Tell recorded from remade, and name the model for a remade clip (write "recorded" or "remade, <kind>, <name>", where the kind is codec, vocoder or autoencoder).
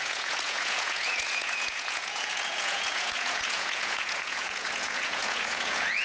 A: remade, vocoder, Vocos